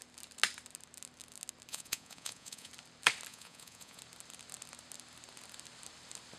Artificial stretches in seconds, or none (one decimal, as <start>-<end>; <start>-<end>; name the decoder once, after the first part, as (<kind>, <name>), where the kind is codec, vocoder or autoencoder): 1.7-2.7 (vocoder, Vocos); 3.3-4.0